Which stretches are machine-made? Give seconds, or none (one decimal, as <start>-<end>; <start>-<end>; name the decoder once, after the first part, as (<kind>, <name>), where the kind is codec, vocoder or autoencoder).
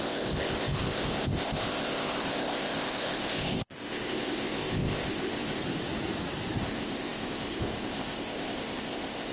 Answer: 0.0-5.6 (codec, ZipCodec); 6.6-9.3